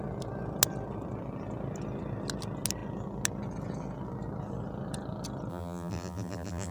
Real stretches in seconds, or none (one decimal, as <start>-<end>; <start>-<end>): 0.0-5.5